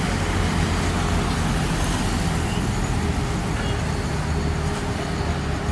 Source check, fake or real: real